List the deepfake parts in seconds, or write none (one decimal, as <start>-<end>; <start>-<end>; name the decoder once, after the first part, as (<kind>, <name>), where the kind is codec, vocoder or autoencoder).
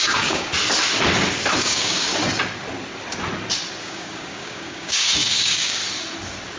0.0-0.5 (codec, DAC); 1.6-2.1; 3.8-5.8